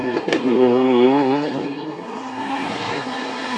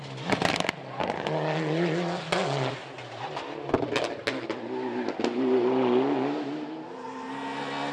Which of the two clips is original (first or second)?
second